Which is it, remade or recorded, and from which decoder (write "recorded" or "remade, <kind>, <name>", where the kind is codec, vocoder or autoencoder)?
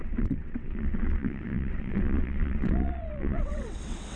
remade, vocoder, WaveNeXt